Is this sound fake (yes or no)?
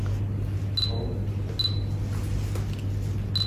no